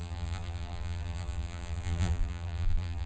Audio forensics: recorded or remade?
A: remade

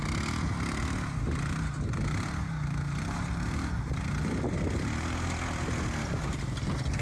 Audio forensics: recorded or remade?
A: recorded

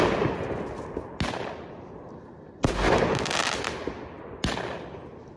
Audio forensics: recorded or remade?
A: recorded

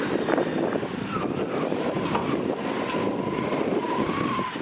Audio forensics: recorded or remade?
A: recorded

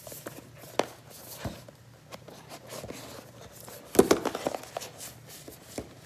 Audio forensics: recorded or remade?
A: recorded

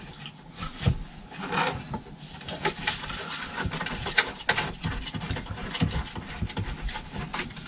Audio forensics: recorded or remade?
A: recorded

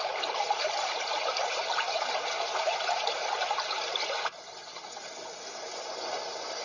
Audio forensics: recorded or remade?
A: remade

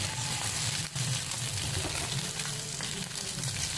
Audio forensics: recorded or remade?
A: remade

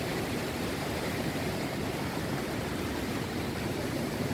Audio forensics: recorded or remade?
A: remade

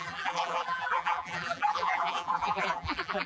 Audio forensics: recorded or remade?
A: remade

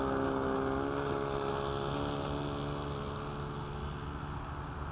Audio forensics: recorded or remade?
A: recorded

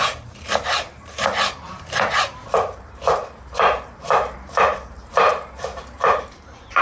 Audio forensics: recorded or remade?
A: remade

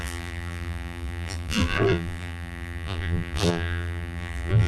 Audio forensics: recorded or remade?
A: remade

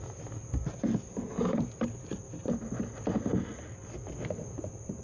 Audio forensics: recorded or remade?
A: recorded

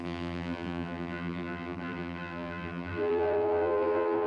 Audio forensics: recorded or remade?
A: remade